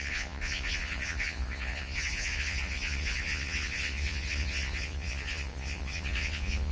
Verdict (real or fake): fake